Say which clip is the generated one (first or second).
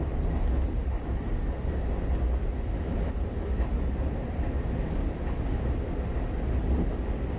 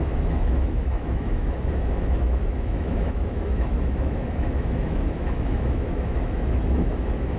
second